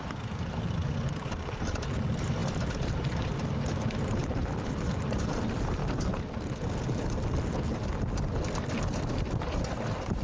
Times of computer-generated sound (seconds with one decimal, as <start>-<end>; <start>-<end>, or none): 0.0-0.8; 1.3-5.8; 9.1-10.2